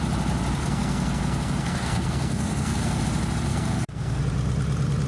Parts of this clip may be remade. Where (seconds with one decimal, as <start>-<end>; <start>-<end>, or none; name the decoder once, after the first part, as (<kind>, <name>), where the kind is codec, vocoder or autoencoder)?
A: 0.6-3.0 (codec, SNAC); 3.5-4.2